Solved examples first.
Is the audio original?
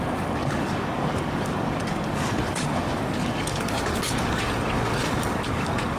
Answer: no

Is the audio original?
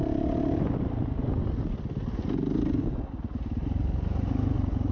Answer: yes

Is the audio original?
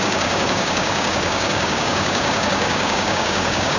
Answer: no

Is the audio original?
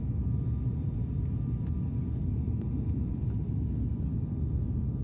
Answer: yes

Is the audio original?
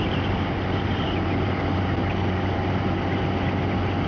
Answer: yes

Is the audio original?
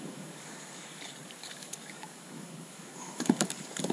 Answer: no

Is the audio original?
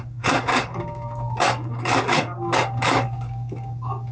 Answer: no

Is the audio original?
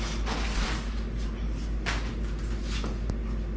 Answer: yes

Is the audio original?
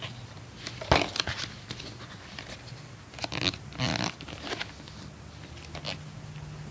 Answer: yes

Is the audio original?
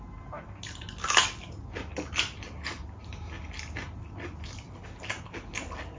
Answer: yes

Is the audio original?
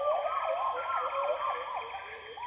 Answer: yes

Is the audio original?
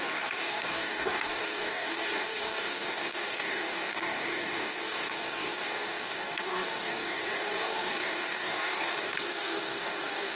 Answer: no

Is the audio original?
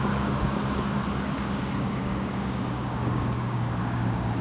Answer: no